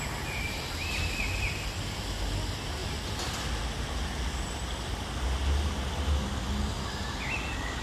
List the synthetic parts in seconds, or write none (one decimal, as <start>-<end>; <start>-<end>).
none